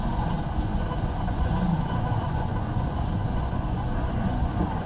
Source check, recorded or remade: remade